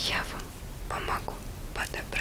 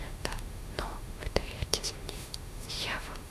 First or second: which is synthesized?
second